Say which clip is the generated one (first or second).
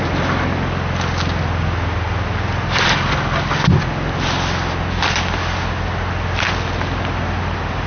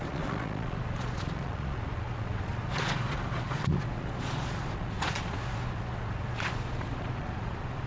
second